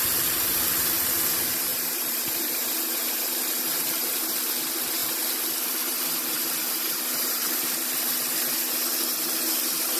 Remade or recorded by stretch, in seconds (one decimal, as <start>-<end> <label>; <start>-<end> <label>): 0.0-1.7 recorded; 1.7-3.4 remade; 3.4-10.0 recorded